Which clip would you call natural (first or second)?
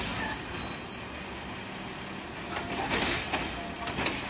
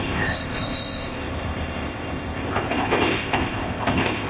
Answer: first